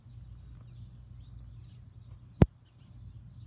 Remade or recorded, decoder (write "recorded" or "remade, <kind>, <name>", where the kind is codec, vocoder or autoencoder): recorded